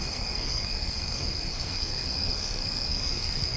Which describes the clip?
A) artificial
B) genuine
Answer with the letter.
A